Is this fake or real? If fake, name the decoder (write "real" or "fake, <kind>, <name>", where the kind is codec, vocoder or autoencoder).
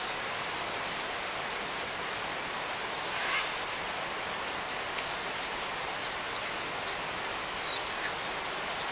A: real